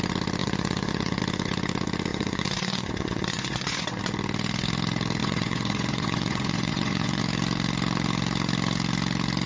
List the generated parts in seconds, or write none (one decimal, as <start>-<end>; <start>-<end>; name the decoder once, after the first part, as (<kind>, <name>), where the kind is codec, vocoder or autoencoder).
0.4-1.2 (vocoder, Vocos); 2.1-4.0; 5.2-7.2